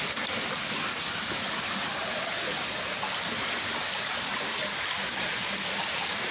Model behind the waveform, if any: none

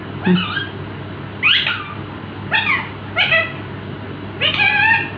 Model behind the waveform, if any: none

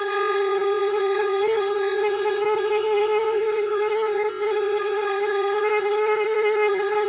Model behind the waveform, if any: codec, SNAC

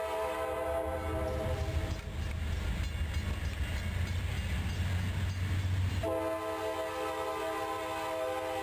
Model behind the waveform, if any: none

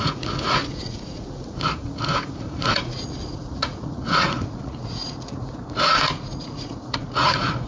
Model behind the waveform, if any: vocoder, Vocos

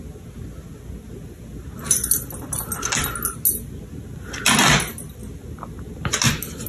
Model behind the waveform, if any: none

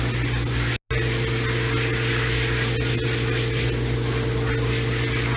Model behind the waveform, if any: none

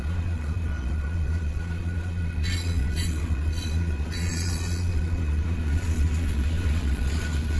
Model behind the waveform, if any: vocoder, Vocos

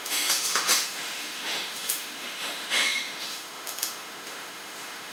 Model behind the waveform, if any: autoencoder, DAC-VAE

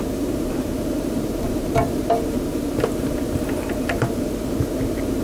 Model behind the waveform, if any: vocoder, BigVGAN v2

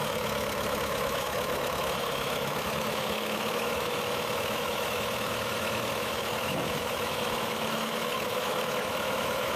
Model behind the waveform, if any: autoencoder, DAC-VAE